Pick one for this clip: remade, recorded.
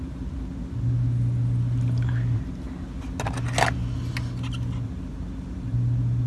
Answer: recorded